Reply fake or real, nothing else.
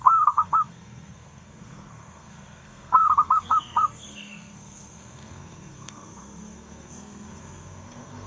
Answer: fake